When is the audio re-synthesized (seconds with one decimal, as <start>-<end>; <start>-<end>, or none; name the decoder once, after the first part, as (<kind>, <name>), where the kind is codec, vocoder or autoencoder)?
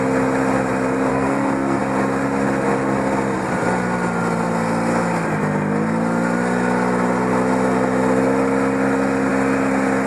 1.1-1.8 (codec, SNAC)